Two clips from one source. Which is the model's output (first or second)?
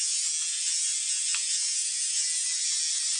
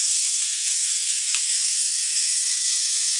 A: second